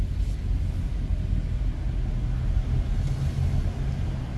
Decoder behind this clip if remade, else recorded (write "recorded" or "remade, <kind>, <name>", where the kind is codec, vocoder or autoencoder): recorded